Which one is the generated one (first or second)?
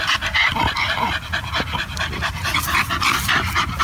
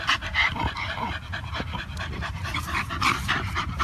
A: second